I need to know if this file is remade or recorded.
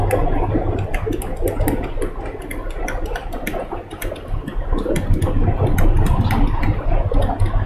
recorded